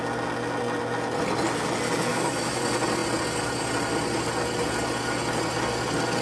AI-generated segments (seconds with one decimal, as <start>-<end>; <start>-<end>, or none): 2.1-2.6